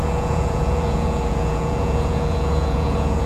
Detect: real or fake fake